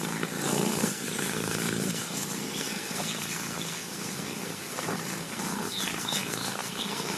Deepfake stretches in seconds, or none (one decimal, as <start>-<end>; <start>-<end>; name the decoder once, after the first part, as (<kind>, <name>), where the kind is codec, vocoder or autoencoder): 0.0-7.2 (codec, SNAC)